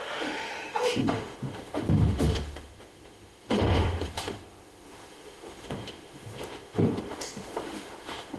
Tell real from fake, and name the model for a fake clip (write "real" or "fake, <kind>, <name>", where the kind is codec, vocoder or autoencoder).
fake, autoencoder, DAC-VAE